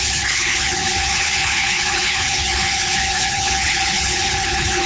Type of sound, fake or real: fake